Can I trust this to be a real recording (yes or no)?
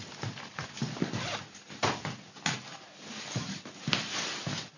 yes